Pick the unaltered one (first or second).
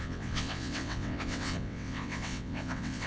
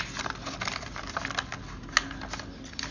second